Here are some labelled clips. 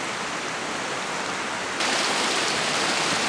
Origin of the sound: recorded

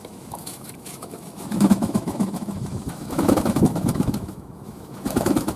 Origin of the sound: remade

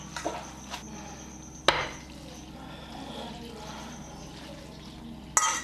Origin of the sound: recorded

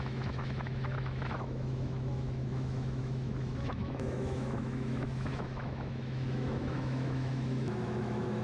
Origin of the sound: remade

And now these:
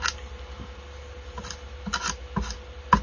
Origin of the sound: recorded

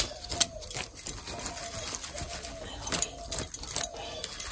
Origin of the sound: recorded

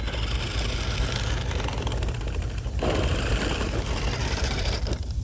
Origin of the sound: recorded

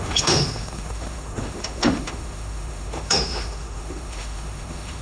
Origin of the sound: remade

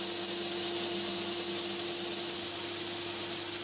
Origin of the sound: recorded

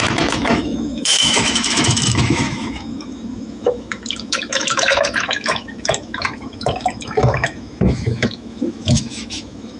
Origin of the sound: remade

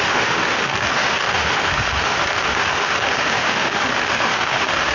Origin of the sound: remade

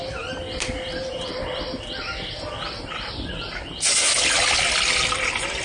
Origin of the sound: recorded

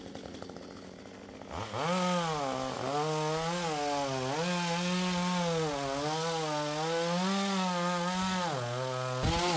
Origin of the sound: recorded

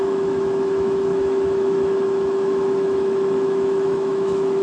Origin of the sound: remade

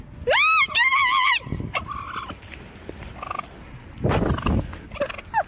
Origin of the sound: recorded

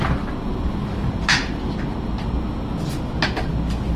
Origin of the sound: recorded